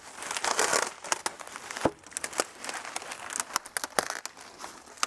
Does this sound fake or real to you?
real